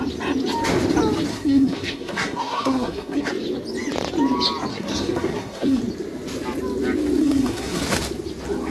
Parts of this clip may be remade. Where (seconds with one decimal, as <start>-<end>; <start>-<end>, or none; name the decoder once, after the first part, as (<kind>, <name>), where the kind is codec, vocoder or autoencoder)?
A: 1.3-3.3 (codec, SNAC); 4.7-5.8; 7.2-7.8

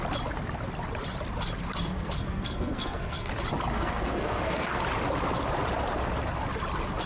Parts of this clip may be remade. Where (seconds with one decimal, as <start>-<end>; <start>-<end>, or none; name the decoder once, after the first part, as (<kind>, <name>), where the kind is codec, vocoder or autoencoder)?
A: 1.9-3.3 (codec, SNAC); 3.7-4.8

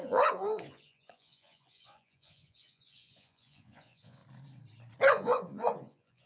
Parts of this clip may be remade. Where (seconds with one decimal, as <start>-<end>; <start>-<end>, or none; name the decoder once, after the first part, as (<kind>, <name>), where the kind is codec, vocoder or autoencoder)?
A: 0.0-4.2 (vocoder, Vocos); 5.1-6.3

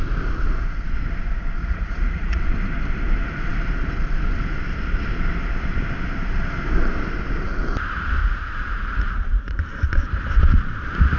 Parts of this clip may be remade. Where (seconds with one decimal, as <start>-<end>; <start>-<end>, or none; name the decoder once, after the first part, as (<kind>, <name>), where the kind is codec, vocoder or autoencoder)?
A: 1.6-2.4 (vocoder, Vocos); 8.2-9.6

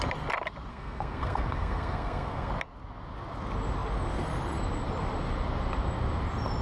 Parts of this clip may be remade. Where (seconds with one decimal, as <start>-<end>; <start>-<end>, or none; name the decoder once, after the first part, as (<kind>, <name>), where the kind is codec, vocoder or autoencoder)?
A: 0.7-2.5 (codec, SNAC)